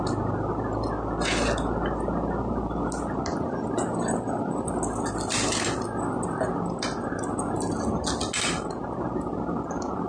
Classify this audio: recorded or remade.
recorded